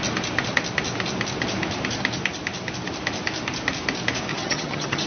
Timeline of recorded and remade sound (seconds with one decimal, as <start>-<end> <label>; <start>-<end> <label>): 0.0-4.3 recorded; 4.3-5.1 remade